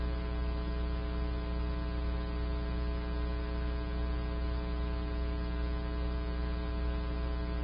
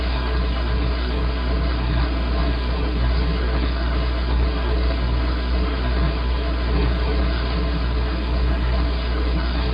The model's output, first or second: second